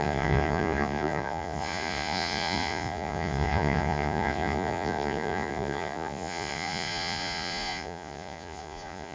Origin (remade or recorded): remade